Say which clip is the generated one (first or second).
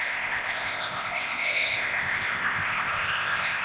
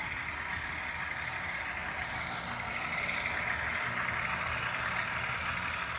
first